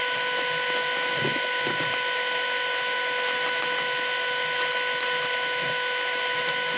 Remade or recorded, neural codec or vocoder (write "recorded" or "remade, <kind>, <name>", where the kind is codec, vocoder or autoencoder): recorded